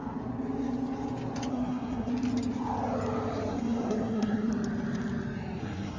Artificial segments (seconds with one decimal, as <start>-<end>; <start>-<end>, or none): 1.5-2.1; 3.5-4.5; 5.6-6.0